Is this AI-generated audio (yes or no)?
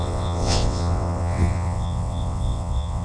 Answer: yes